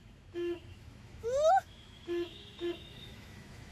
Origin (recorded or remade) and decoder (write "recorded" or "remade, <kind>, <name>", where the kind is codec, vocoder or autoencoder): remade, autoencoder, DAC-VAE